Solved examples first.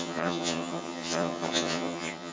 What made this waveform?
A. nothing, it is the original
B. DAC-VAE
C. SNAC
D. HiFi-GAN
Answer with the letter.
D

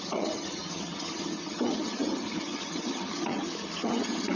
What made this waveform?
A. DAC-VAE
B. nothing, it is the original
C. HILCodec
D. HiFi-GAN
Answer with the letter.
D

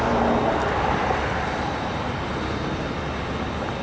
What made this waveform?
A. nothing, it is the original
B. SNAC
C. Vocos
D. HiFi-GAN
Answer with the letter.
A